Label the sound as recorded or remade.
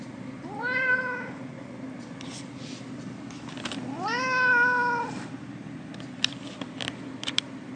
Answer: recorded